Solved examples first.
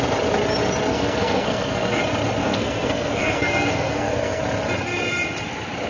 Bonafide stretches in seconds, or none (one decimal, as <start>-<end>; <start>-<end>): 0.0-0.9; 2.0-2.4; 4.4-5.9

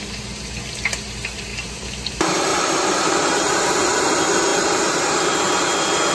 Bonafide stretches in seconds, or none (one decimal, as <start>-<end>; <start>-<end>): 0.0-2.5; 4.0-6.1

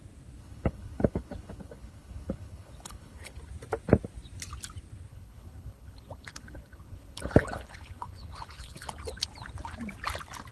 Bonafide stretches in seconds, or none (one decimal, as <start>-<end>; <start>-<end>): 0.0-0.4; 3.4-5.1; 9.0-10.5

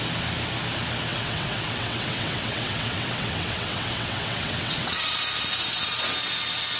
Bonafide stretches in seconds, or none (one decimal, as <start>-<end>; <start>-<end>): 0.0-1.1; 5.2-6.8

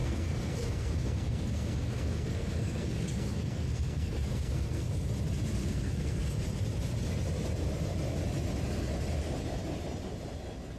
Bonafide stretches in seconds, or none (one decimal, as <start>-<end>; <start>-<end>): 5.1-5.6; 6.4-10.8